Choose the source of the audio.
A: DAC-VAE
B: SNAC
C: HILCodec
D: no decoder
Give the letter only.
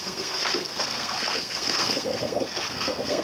B